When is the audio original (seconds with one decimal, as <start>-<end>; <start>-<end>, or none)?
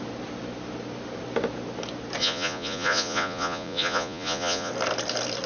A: 0.0-2.2; 4.7-5.5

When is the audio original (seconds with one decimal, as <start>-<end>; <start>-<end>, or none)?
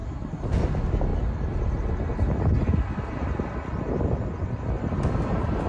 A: 0.0-5.7